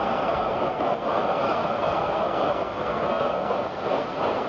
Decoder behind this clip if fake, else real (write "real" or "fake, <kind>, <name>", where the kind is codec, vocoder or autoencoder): fake, codec, SNAC